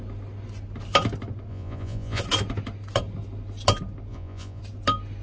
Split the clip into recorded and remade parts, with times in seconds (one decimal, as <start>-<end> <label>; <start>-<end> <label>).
0.0-1.5 recorded; 1.5-2.2 remade; 2.2-4.1 recorded; 4.1-4.6 remade; 4.6-5.2 recorded